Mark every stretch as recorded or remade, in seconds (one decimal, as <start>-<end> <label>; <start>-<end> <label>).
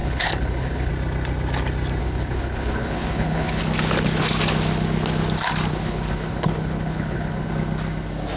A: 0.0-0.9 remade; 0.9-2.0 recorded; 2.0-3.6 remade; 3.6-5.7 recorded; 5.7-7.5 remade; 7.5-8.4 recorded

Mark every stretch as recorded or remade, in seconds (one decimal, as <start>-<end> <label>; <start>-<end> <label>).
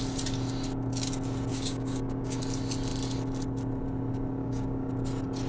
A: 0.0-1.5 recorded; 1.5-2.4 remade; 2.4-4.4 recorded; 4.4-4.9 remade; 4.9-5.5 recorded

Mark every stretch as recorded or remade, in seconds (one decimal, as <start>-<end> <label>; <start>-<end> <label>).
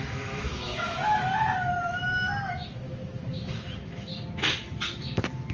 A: 0.0-1.0 remade; 1.0-2.5 recorded; 2.5-4.1 remade; 4.1-5.5 recorded